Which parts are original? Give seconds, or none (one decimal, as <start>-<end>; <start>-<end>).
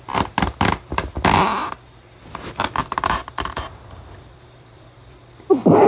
3.2-4.2